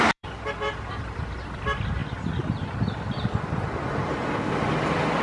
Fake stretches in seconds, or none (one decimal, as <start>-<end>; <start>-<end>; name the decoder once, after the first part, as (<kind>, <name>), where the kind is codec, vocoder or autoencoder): 0.0-2.0 (vocoder, BigVGAN v2)